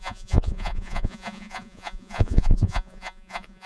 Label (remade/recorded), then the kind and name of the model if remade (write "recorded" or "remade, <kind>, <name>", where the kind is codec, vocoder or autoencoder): remade, vocoder, Vocos